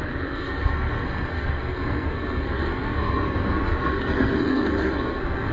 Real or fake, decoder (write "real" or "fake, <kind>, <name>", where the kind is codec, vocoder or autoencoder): fake, codec, SNAC